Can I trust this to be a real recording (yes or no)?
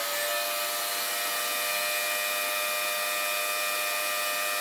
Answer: yes